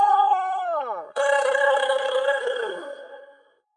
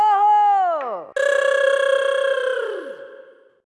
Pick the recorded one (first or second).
second